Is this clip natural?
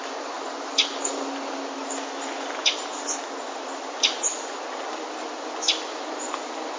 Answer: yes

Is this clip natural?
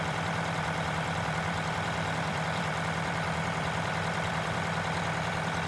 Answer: no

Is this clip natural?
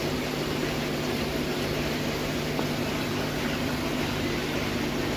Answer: yes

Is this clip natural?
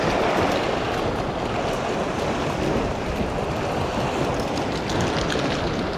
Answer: yes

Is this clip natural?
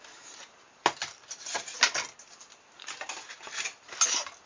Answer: yes